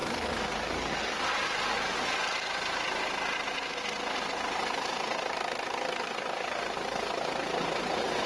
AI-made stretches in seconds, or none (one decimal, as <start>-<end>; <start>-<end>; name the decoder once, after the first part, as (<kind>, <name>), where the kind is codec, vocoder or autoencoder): 0.0-1.2 (codec, DAC)